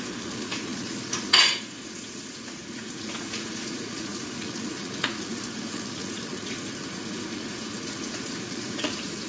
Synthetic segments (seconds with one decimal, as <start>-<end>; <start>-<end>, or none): 0.0-9.3